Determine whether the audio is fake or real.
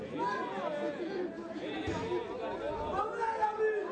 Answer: real